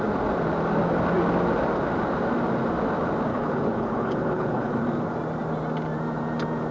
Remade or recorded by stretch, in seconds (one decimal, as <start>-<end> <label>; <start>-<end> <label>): 0.0-3.3 recorded; 3.3-4.7 remade; 4.7-6.7 recorded